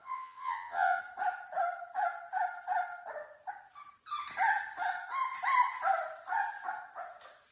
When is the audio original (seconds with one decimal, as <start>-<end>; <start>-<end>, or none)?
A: 1.0-7.5